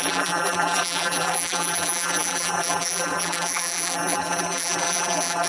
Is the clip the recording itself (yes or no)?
no